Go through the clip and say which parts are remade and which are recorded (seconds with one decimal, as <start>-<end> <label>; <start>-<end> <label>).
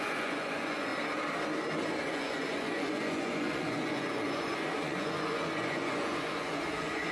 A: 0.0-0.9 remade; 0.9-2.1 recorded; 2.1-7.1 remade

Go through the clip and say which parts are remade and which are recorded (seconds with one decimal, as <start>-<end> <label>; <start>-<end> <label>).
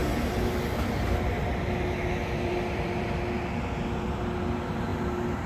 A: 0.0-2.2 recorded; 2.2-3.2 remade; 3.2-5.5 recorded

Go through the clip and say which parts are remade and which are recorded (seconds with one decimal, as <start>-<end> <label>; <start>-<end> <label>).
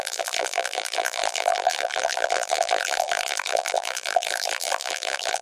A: 0.0-5.4 remade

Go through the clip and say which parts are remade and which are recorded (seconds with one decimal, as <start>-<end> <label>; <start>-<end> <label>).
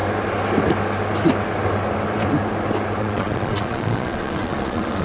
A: 0.0-3.0 recorded; 3.0-5.0 remade